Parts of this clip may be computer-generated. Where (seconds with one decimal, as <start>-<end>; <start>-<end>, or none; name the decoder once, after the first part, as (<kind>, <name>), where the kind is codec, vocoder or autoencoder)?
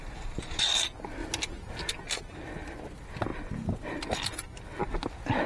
0.0-0.7 (vocoder, BigVGAN v2)